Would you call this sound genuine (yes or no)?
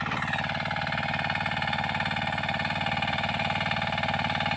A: yes